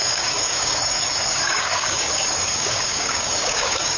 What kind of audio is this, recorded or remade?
remade